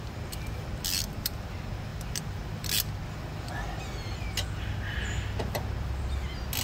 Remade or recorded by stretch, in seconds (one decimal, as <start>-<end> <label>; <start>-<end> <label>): 0.0-6.6 recorded